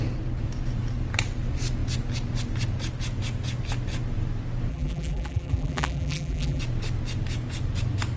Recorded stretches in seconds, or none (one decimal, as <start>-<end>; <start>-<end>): 0.0-4.7; 6.6-8.2

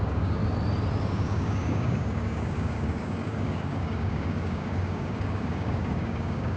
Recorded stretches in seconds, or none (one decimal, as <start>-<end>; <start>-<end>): 0.4-1.0

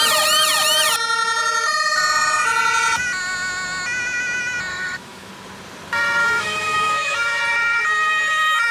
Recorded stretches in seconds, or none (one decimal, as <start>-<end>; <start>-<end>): 0.0-4.7; 5.3-6.2; 7.4-8.7

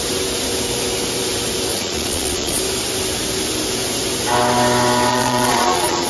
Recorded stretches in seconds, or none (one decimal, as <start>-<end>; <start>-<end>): 0.0-1.7; 2.6-5.1